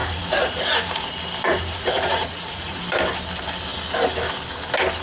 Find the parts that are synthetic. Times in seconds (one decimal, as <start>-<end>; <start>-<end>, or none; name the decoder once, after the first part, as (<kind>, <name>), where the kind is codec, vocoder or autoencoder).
0.0-1.1 (vocoder, Vocos); 1.5-2.8